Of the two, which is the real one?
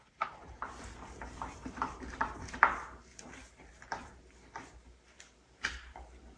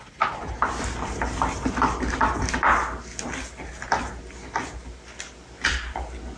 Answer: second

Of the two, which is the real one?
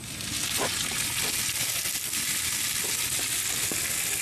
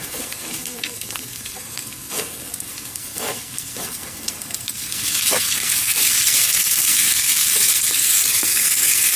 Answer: first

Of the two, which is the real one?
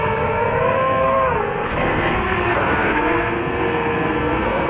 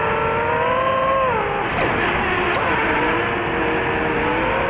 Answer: second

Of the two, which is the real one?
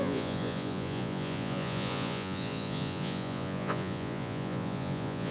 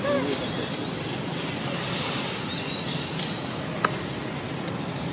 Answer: second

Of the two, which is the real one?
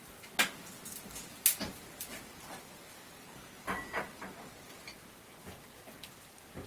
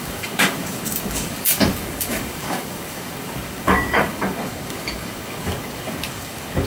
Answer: first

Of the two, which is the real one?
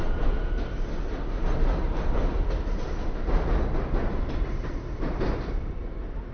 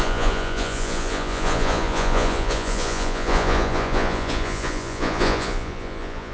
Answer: first